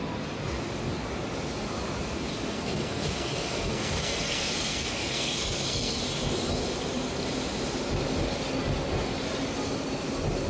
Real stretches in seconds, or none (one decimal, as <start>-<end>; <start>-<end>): 0.0-2.3; 6.0-10.5